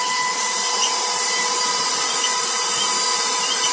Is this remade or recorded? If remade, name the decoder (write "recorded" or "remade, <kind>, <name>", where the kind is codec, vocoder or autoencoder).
remade, vocoder, BigVGAN v2